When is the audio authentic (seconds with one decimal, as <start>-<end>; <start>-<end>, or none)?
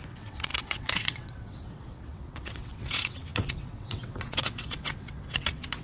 none